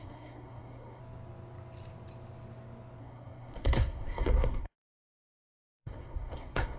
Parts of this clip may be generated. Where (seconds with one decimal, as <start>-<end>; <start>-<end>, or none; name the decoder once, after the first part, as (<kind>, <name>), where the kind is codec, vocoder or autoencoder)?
0.0-1.0 (codec, SNAC); 3.0-6.8